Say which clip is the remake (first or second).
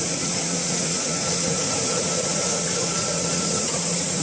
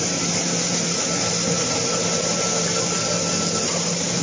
first